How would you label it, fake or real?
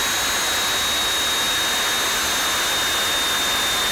real